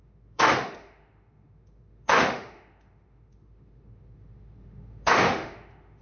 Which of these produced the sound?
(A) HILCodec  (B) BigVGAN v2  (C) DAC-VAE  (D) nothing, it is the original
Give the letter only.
C